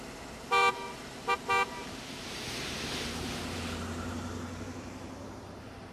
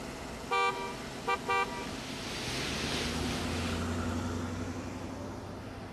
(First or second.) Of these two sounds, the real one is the second